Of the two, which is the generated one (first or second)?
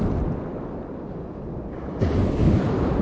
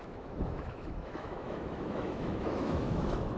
second